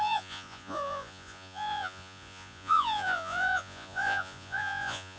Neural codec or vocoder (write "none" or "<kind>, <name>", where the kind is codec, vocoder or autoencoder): vocoder, Vocos